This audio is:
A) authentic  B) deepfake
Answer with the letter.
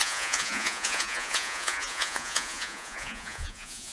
B